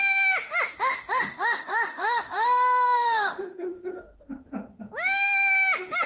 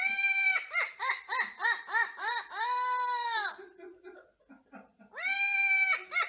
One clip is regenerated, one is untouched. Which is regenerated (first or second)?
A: first